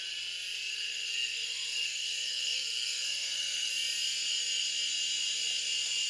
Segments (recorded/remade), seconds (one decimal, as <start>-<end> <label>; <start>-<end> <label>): 0.0-0.7 recorded; 0.7-3.7 remade; 3.7-6.1 recorded